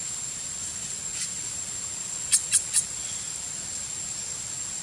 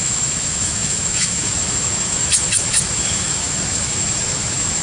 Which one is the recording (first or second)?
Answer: first